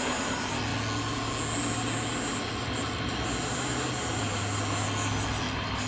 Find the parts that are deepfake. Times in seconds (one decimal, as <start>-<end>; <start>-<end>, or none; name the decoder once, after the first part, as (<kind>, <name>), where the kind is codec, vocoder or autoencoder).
none